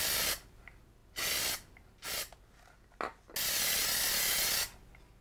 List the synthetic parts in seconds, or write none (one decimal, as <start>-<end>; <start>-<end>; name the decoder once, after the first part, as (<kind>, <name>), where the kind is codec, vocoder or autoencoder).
none